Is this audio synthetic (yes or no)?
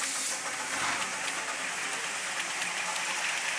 no